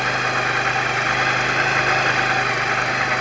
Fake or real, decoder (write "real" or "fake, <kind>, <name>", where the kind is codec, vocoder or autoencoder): real